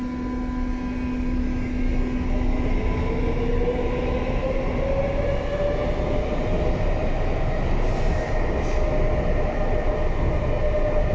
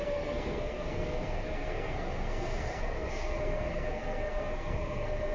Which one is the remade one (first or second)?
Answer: second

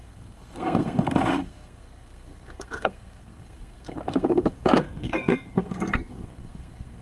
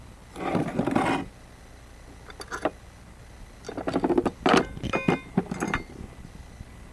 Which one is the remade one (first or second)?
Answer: first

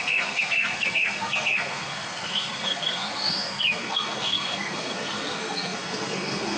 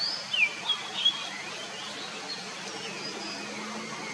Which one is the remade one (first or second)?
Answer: first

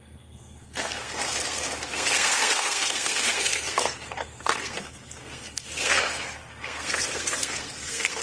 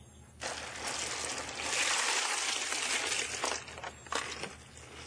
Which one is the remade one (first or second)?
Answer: first